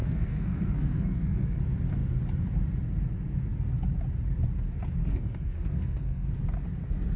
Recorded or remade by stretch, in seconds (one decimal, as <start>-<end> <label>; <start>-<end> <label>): 0.0-1.6 remade; 1.6-5.0 recorded; 5.0-6.3 remade; 6.3-7.2 recorded